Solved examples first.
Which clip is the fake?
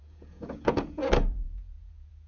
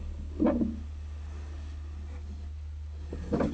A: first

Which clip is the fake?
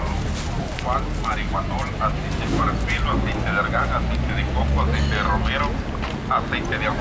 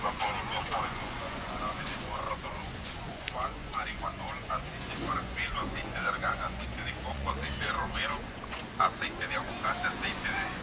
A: second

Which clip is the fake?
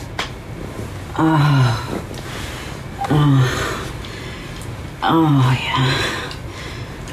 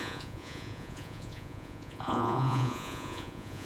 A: second